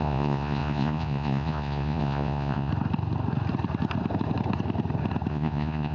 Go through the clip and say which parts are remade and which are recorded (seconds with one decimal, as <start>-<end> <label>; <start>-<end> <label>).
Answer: 0.0-2.7 remade; 2.7-5.3 recorded; 5.3-5.9 remade